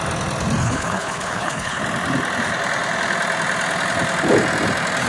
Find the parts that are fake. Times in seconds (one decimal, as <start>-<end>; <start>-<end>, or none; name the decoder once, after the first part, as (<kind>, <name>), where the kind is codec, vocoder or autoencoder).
0.6-1.8 (codec, HILCodec)